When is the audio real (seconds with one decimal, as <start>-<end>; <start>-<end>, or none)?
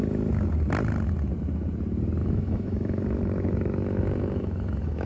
0.0-2.2